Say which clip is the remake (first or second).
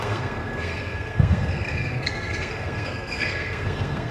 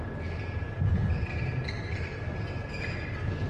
first